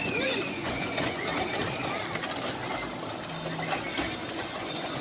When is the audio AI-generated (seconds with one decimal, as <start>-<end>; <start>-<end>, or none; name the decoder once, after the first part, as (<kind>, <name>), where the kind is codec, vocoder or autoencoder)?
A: 0.0-1.3 (vocoder, Vocos); 4.3-5.0